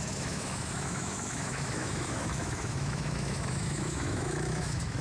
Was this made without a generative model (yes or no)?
no